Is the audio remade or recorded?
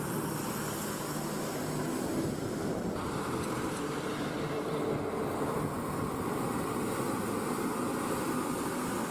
recorded